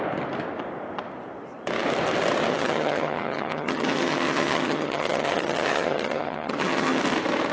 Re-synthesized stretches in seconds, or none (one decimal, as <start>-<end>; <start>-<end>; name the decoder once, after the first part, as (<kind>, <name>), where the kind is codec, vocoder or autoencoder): 2.5-7.0 (vocoder, HiFi-GAN)